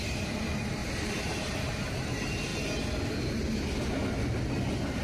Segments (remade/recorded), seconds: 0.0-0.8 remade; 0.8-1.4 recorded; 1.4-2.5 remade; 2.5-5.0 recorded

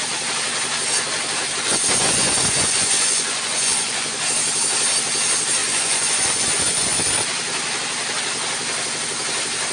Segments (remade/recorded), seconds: 0.0-1.7 recorded; 1.7-4.2 remade; 4.2-5.6 recorded; 5.6-7.1 remade; 7.1-9.7 recorded

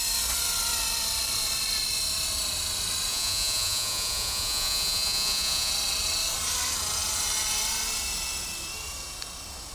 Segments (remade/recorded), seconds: 0.0-3.1 recorded; 3.1-5.7 remade; 5.7-9.7 recorded

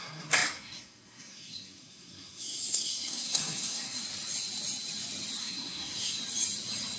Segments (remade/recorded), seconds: 0.0-4.0 remade; 4.0-5.4 recorded; 5.4-6.2 remade; 6.2-7.0 recorded